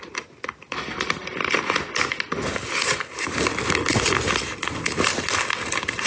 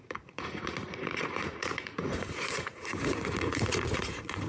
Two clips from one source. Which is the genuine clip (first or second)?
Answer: first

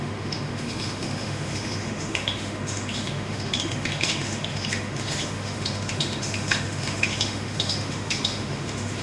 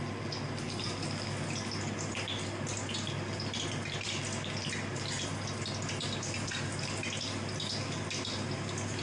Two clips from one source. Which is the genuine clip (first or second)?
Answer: second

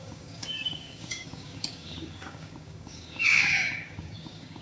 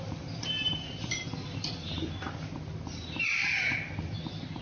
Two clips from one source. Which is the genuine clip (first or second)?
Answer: second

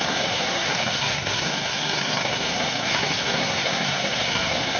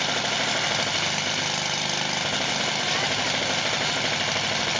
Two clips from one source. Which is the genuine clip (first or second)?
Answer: second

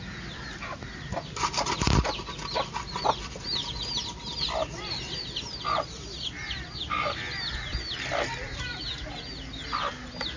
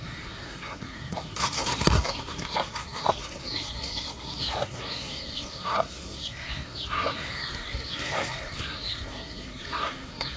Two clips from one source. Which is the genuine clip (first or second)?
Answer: first